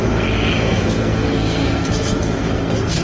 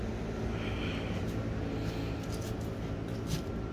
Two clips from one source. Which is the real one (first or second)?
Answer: second